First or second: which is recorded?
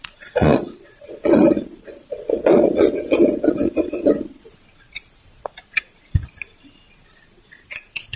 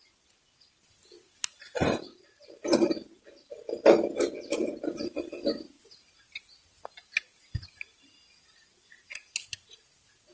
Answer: second